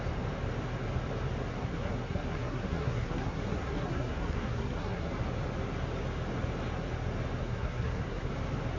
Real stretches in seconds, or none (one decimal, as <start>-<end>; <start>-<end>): 0.0-1.6; 5.1-7.4; 8.3-8.8

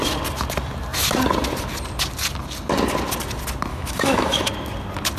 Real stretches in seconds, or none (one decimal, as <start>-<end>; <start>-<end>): 0.0-3.7; 4.5-5.2

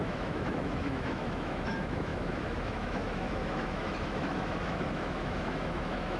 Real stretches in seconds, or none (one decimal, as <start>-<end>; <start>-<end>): none

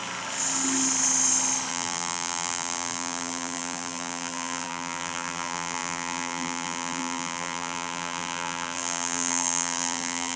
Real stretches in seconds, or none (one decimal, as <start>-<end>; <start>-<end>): 0.0-1.7

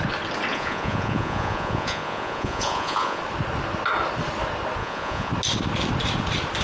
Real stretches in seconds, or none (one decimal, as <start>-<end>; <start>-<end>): 0.0-0.5; 3.2-4.8; 5.3-6.6

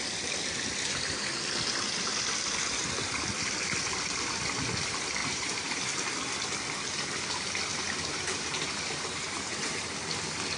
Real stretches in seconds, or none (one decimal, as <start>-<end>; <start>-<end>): 0.0-5.2; 5.8-7.7; 9.9-10.6

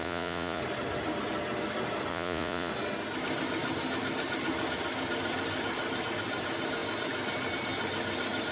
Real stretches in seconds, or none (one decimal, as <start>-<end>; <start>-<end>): 0.6-2.1; 2.7-8.5

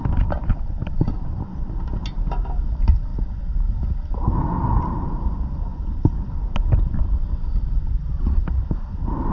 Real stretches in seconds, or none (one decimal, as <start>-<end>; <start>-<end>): 1.5-2.7; 3.1-4.8; 8.4-9.3